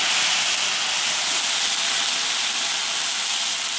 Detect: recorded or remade recorded